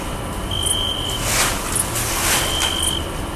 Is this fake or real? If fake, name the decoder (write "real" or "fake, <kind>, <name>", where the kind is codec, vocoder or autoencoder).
real